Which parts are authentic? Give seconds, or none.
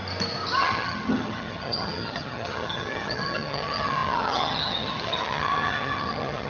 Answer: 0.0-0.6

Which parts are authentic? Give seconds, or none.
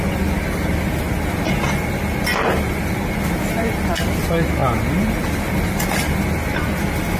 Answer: 0.0-7.2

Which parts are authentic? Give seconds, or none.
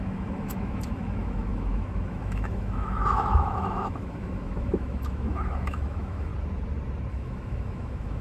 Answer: 6.3-7.1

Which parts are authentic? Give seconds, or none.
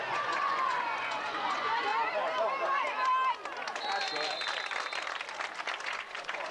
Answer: 1.9-5.8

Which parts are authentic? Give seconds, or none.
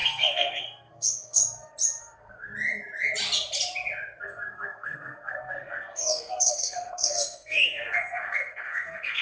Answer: 1.4-2.0; 2.5-4.2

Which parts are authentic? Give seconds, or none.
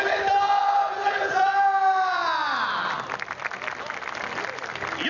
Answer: 0.0-5.1